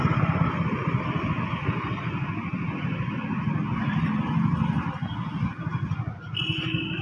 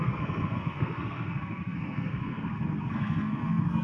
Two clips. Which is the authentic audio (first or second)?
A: first